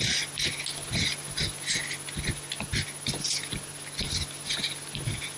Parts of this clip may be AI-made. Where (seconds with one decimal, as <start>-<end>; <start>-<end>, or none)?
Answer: none